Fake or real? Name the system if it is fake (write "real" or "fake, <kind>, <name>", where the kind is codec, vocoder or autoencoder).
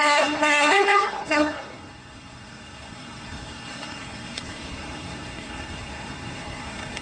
fake, codec, SNAC